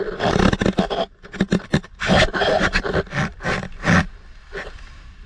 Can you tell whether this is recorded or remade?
recorded